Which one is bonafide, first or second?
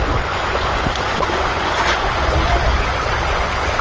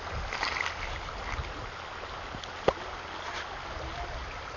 second